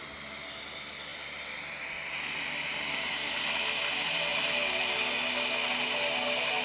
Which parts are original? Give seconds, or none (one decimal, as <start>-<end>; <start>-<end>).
0.0-1.1; 1.8-4.3; 4.9-6.6